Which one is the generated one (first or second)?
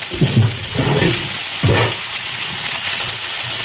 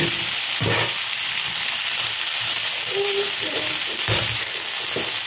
first